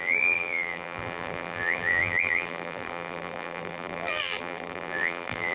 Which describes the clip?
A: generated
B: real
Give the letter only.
A